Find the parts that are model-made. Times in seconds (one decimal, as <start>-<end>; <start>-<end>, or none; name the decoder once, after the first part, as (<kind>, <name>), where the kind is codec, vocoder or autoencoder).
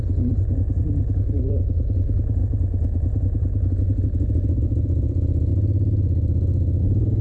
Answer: 0.0-5.5 (vocoder, Vocos); 6.8-7.2